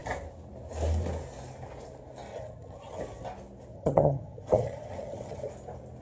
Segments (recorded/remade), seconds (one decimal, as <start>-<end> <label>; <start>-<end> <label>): 0.0-2.3 recorded; 2.3-3.0 remade; 3.0-3.7 recorded; 3.7-5.5 remade; 5.5-6.0 recorded